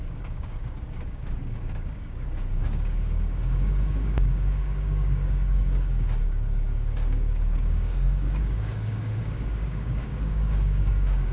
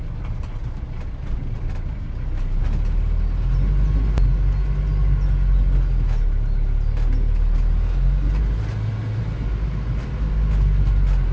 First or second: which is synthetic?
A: first